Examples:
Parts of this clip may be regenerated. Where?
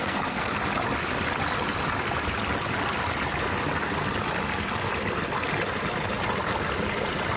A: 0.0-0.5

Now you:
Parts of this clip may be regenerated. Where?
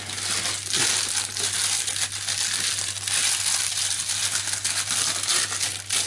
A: none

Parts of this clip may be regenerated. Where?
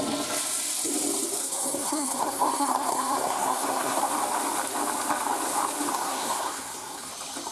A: 1.4-4.0; 5.9-7.1